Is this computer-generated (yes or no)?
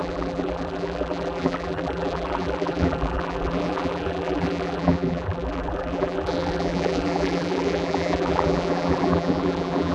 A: yes